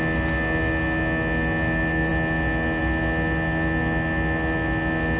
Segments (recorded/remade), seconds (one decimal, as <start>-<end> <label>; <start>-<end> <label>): 0.0-5.2 recorded